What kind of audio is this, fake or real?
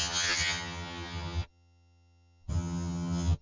fake